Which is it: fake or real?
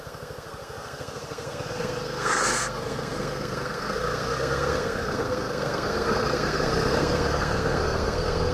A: fake